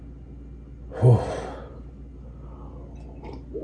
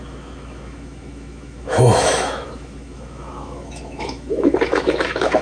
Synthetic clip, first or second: second